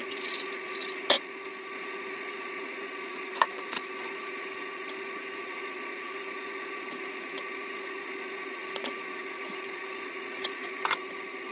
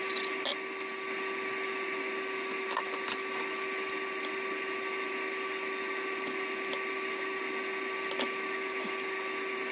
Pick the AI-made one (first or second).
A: first